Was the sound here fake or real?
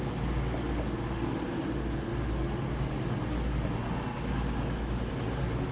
real